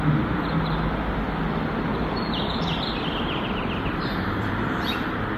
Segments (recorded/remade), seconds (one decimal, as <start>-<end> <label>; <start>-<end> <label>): 0.0-1.9 recorded; 1.9-5.4 remade